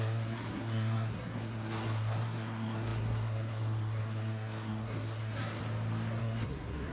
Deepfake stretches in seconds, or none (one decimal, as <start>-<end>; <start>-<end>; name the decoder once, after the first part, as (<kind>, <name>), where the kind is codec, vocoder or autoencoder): 0.0-5.6 (codec, SNAC); 6.2-6.9